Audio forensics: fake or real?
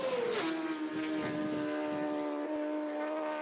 real